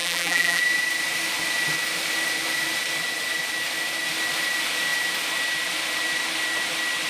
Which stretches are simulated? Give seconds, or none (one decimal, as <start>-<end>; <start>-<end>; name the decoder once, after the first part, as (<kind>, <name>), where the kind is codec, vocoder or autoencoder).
0.0-0.6 (vocoder, BigVGAN v2)